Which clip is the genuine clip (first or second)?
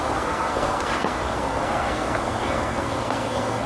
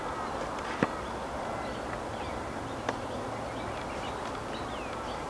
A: second